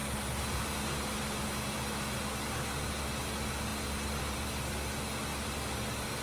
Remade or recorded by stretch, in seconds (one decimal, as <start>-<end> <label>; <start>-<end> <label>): 0.0-6.2 recorded